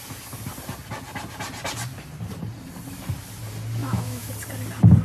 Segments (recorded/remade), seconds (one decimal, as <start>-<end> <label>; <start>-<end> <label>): 0.0-3.8 recorded; 3.8-4.3 remade; 4.3-5.0 recorded